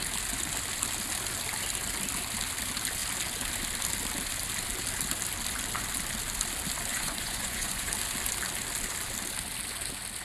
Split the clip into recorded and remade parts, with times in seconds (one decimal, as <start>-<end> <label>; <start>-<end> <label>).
0.0-6.9 recorded; 6.9-7.9 remade; 7.9-10.2 recorded